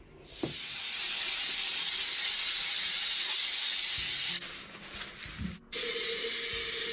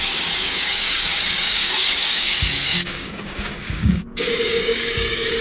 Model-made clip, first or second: second